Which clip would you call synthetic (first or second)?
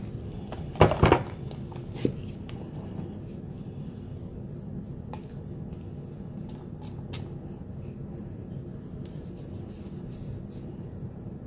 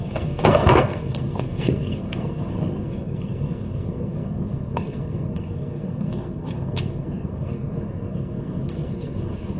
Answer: second